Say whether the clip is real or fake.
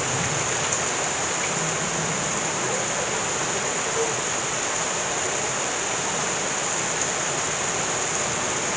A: fake